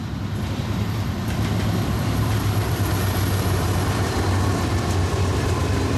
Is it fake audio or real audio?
fake